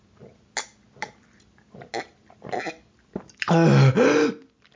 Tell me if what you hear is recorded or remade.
recorded